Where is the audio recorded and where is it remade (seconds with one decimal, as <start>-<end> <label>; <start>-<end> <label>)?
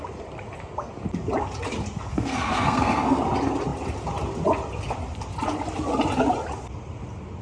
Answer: 0.0-2.1 recorded; 2.1-3.2 remade; 3.2-7.4 recorded